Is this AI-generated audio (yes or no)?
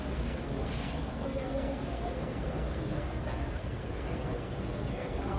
yes